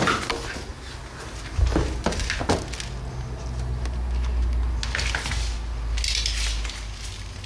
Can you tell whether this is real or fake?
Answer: real